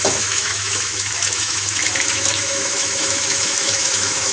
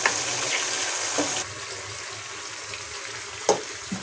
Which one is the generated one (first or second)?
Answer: first